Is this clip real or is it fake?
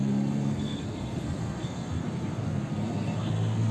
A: fake